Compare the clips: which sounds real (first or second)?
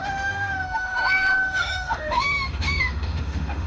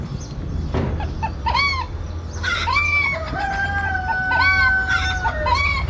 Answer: second